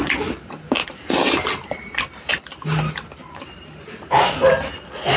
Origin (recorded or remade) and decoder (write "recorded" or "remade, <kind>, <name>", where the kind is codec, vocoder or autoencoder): recorded